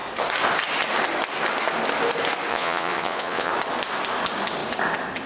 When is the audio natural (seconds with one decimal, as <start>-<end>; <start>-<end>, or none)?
0.0-2.5; 3.5-5.3